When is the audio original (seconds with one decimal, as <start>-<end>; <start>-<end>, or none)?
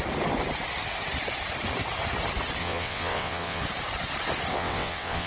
0.0-2.6; 3.6-4.5